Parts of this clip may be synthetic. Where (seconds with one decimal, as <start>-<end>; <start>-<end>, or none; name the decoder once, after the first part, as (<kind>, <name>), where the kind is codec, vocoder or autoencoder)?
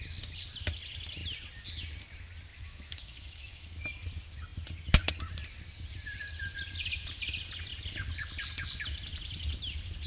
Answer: 2.5-3.8 (autoencoder, DAC-VAE)